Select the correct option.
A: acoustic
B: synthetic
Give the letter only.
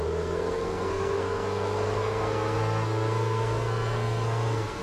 B